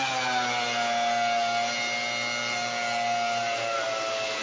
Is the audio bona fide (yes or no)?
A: yes